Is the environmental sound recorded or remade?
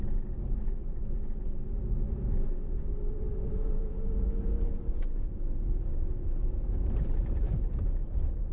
remade